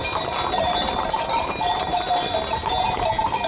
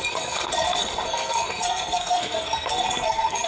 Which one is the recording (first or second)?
first